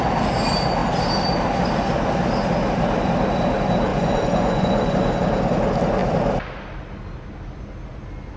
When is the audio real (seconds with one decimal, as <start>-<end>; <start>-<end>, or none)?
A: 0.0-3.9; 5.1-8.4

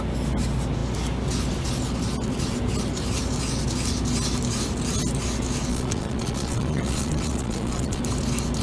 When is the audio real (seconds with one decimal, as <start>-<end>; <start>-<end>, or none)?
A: 0.0-5.7; 8.0-8.6

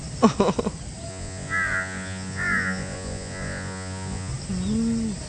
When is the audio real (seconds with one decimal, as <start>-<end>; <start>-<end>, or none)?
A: 0.0-1.1; 4.3-5.3

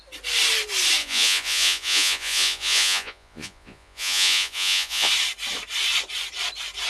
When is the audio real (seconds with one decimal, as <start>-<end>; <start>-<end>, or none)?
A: 0.0-1.0; 5.1-6.9